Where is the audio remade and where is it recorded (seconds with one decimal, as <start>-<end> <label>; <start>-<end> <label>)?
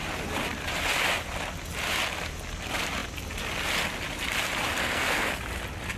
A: 0.0-4.8 recorded; 4.8-5.4 remade; 5.4-6.0 recorded